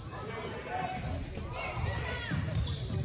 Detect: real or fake real